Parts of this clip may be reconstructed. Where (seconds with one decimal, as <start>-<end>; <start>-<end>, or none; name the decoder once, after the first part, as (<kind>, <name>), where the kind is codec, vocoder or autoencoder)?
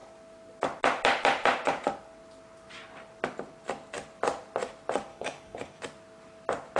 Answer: 5.1-5.8 (codec, DAC)